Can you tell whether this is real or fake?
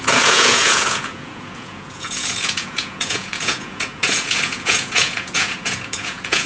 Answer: fake